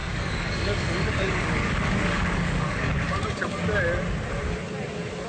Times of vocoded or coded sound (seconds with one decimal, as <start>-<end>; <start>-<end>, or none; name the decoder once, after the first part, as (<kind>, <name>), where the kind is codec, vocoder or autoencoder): 0.0-3.0 (codec, DAC)